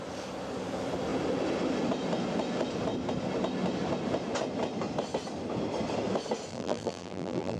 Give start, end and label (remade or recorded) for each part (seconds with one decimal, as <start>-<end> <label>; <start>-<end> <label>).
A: 0.0-6.5 recorded; 6.5-7.6 remade